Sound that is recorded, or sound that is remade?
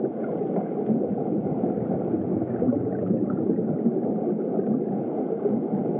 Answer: recorded